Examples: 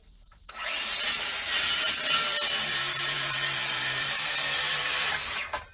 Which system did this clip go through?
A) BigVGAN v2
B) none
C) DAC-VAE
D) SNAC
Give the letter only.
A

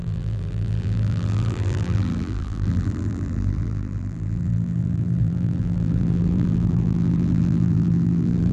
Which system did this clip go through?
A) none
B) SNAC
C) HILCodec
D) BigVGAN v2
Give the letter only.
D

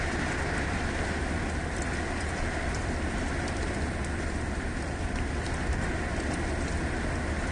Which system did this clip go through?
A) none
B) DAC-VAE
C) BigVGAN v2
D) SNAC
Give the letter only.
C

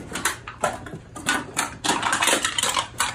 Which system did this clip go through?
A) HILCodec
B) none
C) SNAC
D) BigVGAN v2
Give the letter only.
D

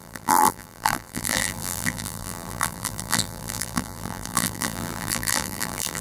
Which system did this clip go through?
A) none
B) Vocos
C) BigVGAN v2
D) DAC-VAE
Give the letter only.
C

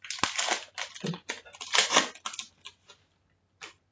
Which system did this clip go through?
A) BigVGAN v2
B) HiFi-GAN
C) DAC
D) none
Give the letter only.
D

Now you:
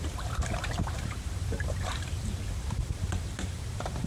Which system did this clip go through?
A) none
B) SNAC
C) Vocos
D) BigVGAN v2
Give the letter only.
D